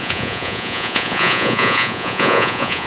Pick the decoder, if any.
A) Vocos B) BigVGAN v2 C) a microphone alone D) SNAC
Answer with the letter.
A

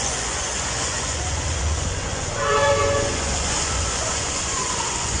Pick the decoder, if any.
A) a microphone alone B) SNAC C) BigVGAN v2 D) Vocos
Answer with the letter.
D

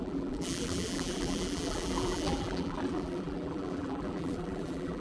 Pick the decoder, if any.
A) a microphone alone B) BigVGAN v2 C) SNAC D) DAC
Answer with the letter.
B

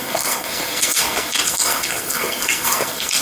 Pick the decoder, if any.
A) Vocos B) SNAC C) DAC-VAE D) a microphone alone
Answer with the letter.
B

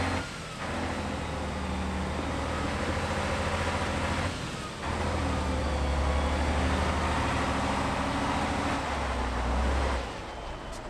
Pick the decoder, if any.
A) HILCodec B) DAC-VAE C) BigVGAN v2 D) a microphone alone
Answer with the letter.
D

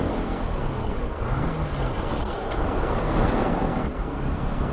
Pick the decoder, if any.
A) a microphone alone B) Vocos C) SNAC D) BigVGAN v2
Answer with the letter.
C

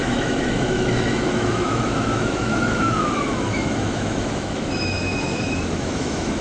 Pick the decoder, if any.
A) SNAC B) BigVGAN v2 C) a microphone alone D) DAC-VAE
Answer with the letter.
D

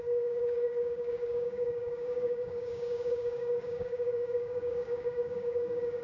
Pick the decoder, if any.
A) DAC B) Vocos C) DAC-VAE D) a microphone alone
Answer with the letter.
A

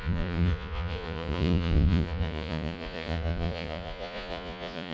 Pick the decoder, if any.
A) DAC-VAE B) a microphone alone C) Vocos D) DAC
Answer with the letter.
C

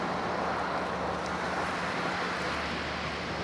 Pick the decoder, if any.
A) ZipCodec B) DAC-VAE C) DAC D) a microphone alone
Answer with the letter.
D